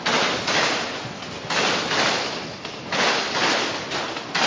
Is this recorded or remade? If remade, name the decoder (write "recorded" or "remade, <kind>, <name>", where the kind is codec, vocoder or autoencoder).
recorded